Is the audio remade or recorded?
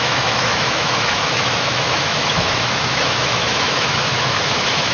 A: remade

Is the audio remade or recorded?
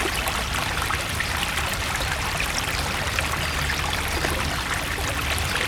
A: remade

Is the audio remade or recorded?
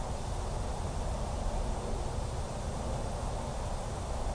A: recorded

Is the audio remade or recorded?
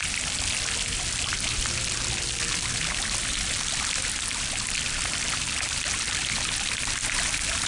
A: recorded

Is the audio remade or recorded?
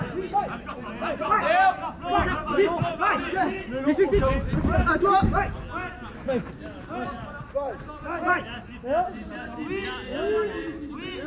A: recorded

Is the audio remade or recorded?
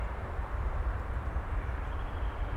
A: remade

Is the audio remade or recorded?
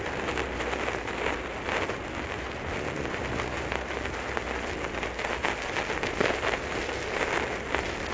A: recorded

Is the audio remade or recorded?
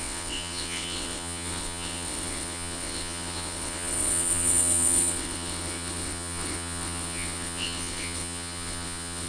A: remade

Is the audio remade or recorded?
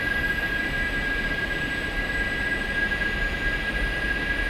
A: recorded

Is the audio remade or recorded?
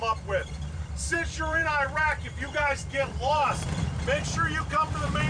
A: remade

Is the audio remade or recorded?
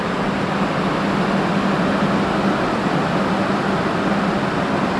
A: recorded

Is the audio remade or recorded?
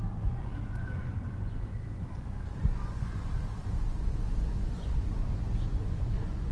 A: remade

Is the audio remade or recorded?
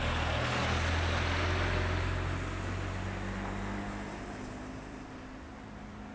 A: recorded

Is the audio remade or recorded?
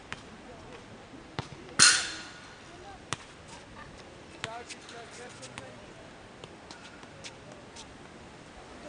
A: recorded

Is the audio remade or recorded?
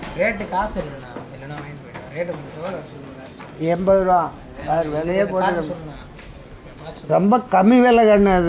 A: recorded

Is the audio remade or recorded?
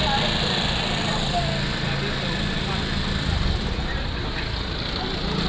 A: recorded